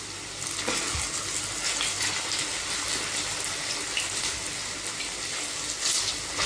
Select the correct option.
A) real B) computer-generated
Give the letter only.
A